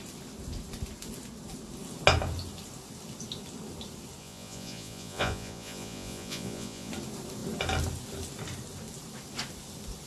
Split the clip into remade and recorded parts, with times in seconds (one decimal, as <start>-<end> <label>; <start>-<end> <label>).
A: 0.0-4.2 recorded; 4.2-6.9 remade; 6.9-10.1 recorded